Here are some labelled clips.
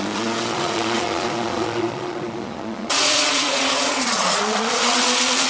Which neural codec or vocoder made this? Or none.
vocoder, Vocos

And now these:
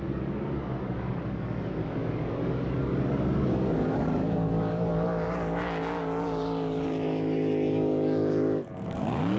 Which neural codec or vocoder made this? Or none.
codec, DAC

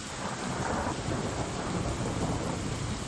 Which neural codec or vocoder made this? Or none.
none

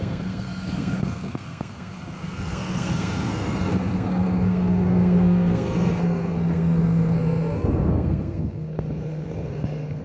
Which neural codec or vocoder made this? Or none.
codec, SNAC